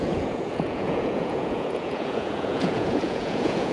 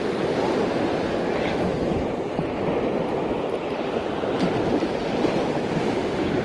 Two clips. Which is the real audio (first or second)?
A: second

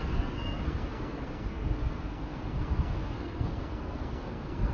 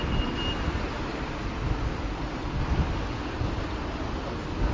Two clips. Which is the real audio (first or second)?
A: second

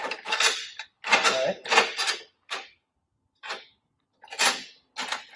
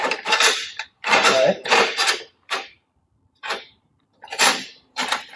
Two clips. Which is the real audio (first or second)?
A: first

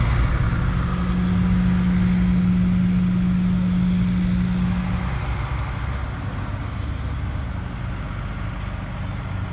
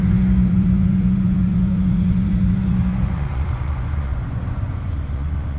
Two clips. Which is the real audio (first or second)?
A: first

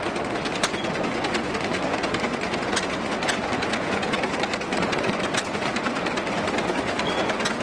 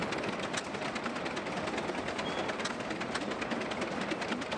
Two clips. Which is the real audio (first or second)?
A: second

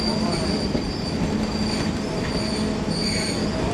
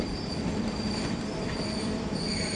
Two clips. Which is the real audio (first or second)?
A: first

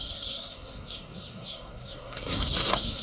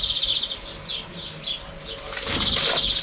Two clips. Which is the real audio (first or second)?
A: second